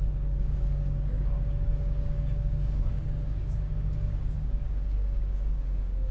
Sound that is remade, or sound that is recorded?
remade